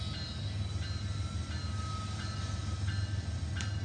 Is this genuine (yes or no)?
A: yes